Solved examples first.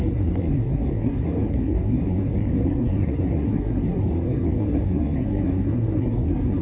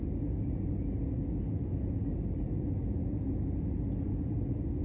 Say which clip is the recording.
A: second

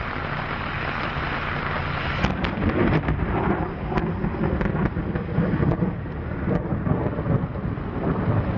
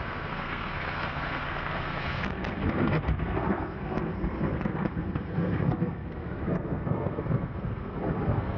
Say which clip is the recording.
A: first